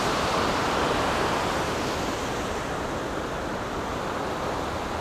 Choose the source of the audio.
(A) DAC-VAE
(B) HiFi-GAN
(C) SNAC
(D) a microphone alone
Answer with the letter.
D